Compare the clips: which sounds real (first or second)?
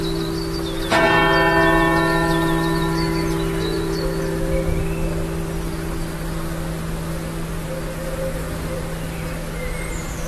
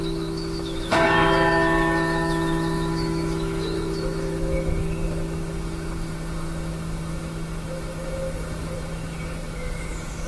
first